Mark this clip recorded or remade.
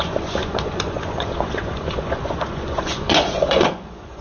remade